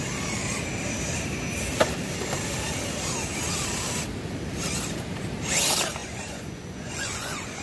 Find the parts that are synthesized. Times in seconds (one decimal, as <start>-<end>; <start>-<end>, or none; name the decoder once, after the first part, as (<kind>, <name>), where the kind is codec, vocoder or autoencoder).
6.0-7.6 (vocoder, Vocos)